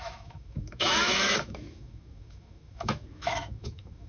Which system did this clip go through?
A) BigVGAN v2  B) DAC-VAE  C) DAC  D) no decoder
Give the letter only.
B